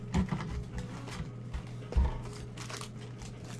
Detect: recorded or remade recorded